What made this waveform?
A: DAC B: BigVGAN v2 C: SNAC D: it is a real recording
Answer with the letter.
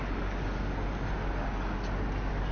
D